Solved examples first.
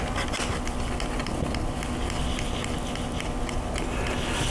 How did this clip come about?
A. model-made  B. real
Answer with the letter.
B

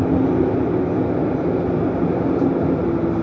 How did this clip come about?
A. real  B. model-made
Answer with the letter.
A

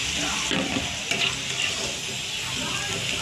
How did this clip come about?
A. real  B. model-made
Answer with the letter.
A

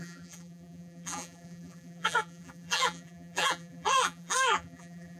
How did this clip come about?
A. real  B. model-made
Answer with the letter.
B